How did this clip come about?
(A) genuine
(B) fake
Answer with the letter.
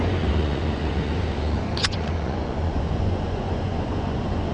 B